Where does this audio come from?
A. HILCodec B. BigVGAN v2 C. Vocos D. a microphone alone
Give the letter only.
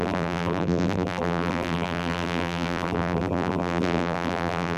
B